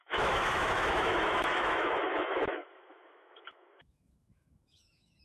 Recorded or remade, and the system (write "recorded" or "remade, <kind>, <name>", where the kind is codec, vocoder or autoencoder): remade, autoencoder, DAC-VAE